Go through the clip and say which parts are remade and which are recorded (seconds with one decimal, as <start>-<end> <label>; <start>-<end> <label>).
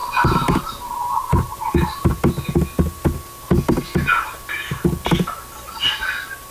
0.0-2.3 remade; 2.3-6.5 recorded